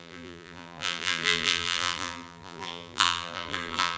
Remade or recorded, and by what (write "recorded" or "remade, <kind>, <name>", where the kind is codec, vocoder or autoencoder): remade, vocoder, BigVGAN v2